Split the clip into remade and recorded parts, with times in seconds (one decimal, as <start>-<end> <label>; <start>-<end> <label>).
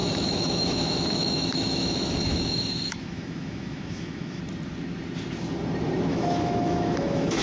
0.0-4.4 remade; 4.4-6.1 recorded; 6.1-7.4 remade